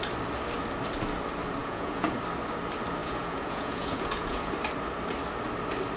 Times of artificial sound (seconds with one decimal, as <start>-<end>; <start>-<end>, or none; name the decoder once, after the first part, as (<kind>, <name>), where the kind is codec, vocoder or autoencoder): 1.6-2.2 (vocoder, Vocos); 3.0-4.5